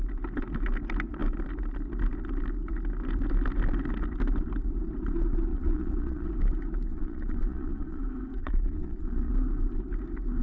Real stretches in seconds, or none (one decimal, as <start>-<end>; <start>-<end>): 0.0-5.5; 6.3-6.9; 8.0-8.4; 9.3-10.4